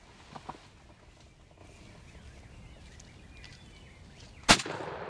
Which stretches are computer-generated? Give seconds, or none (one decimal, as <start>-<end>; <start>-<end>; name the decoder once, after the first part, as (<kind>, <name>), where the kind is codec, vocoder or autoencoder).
none